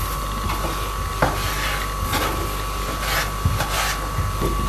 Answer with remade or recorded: recorded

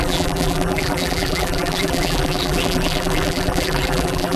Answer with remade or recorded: remade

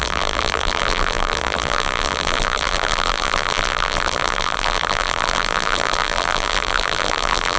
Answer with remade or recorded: remade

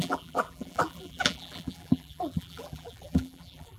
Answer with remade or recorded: remade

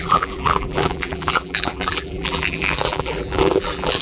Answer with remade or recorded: remade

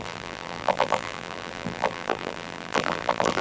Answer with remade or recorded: remade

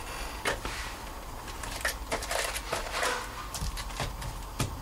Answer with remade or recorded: recorded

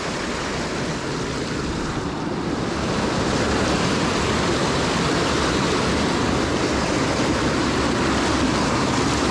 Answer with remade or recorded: recorded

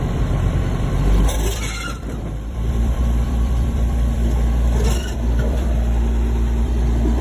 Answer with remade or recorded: remade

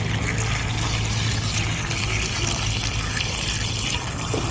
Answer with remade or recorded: recorded